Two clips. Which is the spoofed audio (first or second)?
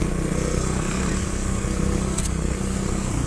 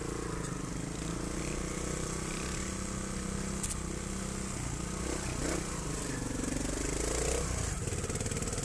first